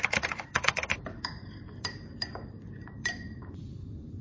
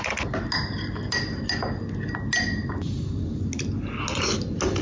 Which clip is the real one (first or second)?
second